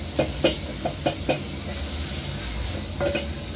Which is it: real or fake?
real